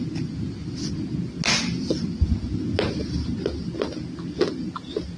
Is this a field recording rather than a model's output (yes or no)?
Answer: yes